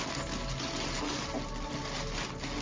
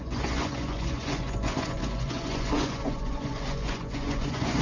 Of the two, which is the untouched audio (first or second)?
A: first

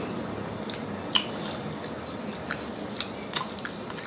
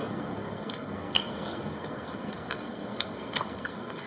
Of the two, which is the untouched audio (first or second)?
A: first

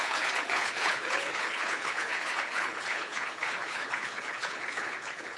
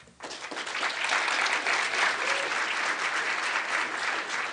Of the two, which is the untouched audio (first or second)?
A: second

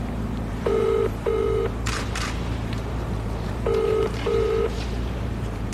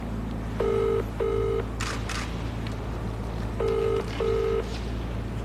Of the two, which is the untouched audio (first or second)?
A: second